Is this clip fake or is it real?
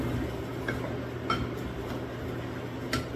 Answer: real